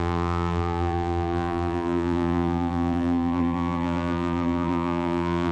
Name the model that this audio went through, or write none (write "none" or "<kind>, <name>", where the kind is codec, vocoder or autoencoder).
vocoder, BigVGAN v2